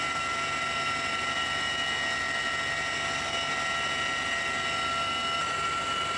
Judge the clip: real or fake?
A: real